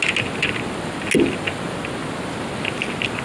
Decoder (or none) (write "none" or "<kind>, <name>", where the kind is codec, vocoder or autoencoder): none